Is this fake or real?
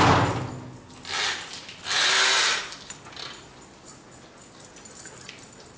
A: real